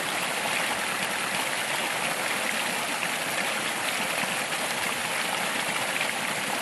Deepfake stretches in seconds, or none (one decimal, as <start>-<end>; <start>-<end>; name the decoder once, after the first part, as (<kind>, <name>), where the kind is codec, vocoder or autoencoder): none